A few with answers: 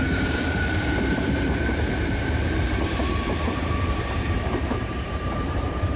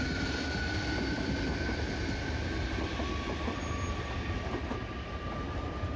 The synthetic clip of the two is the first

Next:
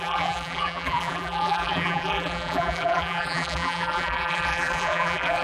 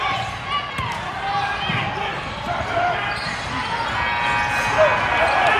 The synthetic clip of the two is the first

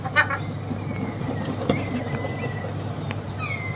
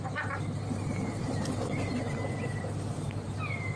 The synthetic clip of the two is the second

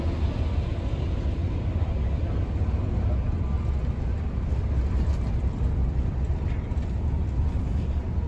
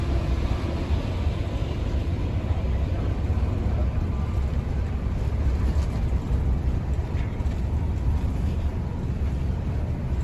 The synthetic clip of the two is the second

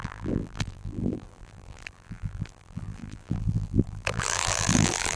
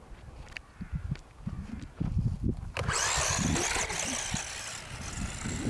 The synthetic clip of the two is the first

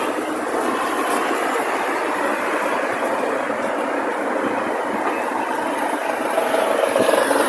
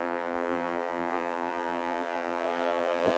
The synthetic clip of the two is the second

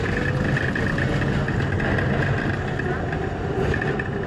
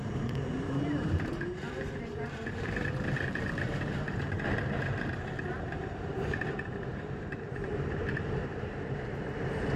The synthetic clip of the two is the second